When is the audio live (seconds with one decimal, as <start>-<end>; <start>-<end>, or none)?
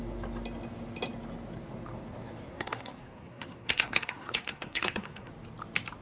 0.0-2.5; 5.3-6.0